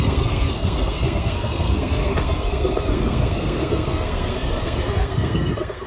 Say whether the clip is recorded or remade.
remade